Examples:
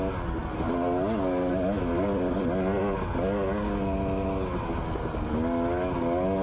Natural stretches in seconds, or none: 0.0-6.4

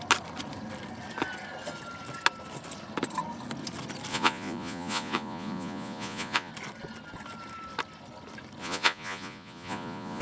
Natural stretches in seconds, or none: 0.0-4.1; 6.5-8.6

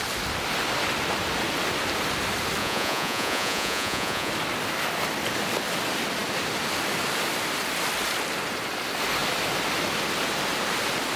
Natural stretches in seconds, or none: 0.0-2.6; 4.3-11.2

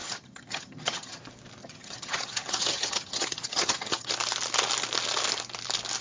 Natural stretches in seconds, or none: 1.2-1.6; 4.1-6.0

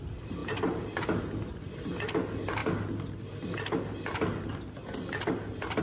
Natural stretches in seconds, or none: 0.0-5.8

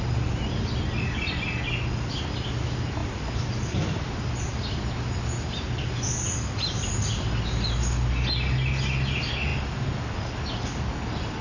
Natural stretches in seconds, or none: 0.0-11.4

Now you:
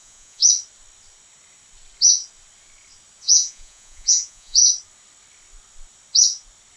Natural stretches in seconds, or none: 0.4-3.2; 4.6-6.8